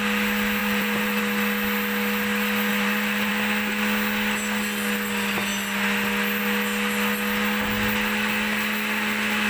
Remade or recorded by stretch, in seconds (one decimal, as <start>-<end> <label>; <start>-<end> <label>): 0.0-0.6 recorded; 0.6-1.2 remade; 1.2-2.7 recorded; 2.7-3.3 remade; 3.3-9.5 recorded